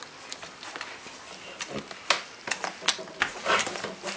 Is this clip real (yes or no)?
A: yes